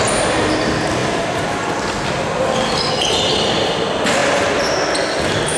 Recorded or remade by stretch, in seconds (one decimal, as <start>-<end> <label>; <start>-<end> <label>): 0.0-1.0 recorded; 1.0-2.4 remade; 2.4-5.6 recorded